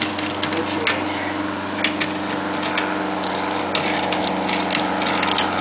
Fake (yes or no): no